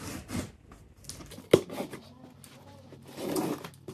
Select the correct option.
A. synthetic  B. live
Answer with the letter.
B